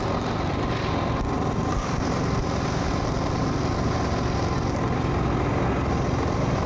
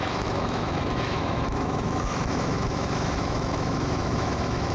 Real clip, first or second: first